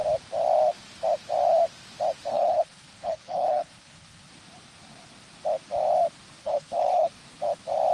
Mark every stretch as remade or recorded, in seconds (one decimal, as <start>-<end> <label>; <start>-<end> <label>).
0.0-2.3 recorded; 2.3-4.3 remade; 4.3-6.4 recorded; 6.4-7.1 remade; 7.1-7.9 recorded